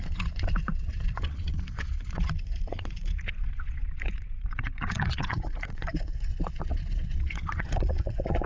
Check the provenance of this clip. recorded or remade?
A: remade